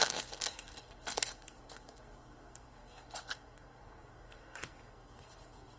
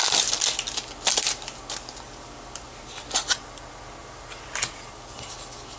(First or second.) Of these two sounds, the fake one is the first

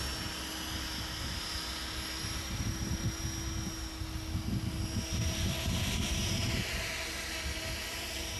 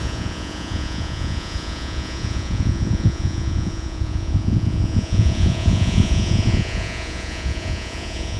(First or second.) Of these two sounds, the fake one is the second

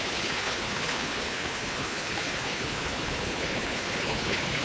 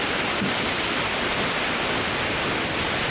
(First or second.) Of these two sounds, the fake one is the first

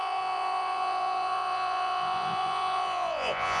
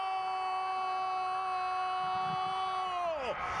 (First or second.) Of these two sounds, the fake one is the first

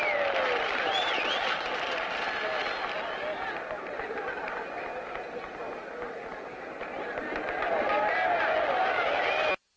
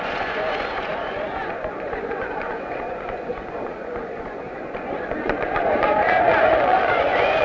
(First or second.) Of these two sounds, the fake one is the second